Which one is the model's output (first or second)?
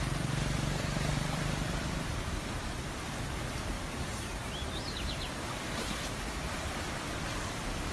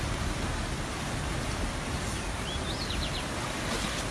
first